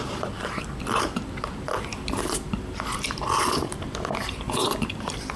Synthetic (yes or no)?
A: yes